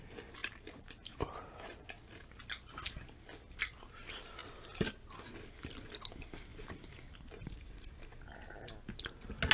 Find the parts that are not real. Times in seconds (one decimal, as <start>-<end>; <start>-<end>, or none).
0.4-1.8; 4.4-5.0; 6.5-8.7